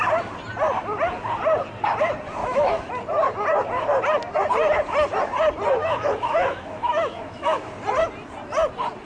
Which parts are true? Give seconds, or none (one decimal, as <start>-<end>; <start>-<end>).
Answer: 0.0-2.4; 2.9-5.8; 7.7-9.1